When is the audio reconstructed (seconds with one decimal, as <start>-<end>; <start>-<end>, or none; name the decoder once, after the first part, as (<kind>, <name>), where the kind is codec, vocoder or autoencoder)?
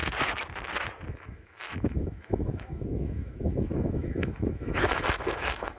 1.1-5.8 (autoencoder, DAC-VAE)